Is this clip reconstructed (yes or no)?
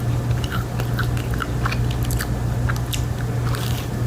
no